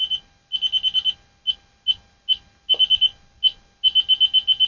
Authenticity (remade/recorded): recorded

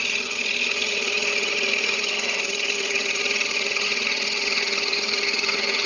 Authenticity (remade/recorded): remade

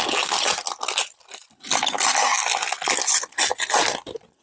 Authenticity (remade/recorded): recorded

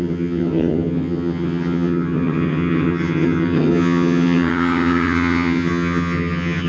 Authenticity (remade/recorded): remade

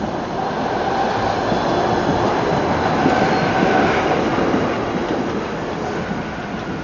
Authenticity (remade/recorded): recorded